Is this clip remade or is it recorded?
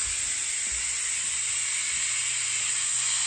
recorded